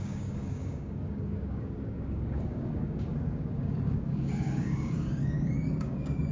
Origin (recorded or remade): remade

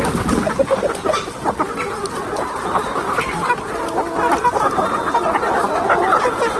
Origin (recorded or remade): recorded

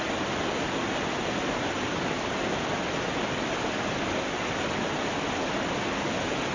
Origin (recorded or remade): recorded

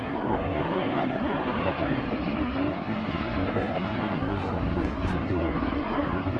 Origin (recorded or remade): remade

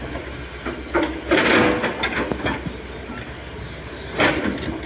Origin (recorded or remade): recorded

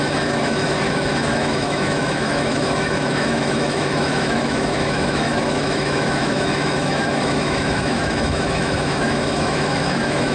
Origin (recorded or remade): remade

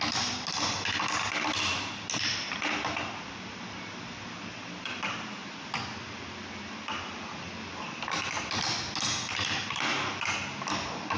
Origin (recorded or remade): recorded